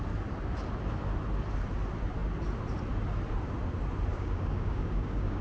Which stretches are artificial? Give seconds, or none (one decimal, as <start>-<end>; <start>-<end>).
4.1-5.4